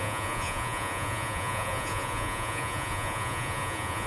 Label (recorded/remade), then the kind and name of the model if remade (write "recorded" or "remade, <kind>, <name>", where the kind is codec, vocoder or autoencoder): remade, vocoder, Vocos